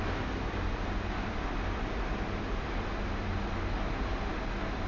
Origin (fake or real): real